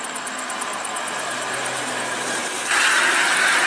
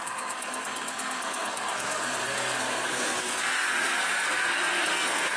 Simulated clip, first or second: second